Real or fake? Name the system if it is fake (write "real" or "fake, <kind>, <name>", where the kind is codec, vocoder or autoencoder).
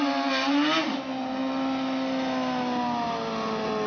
real